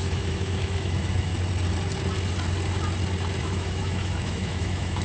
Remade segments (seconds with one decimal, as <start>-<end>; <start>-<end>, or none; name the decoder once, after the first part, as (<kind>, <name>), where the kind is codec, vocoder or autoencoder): 0.0-1.3 (autoencoder, DAC-VAE); 3.4-5.0

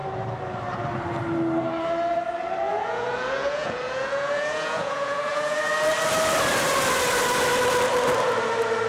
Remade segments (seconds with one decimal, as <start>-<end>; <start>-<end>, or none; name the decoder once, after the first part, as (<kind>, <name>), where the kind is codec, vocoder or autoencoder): 2.7-5.6 (vocoder, Vocos)

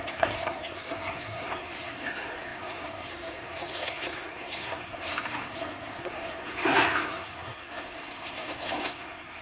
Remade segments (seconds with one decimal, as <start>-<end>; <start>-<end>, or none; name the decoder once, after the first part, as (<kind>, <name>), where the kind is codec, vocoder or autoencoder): 0.0-9.4 (codec, SNAC)

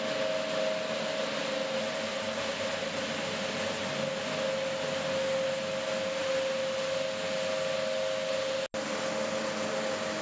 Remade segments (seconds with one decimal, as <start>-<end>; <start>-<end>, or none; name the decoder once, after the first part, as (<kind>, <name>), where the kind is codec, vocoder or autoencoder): none